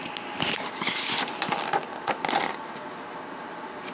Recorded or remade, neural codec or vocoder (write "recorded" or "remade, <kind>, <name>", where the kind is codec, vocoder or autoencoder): recorded